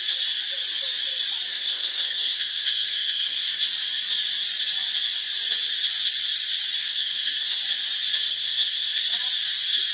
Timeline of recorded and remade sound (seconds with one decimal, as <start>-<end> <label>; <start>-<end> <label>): 0.0-1.5 recorded; 1.5-3.6 remade; 3.6-6.8 recorded; 6.8-7.6 remade; 7.6-8.3 recorded; 8.3-9.1 remade; 9.1-9.9 recorded